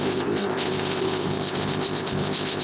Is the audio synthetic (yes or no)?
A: yes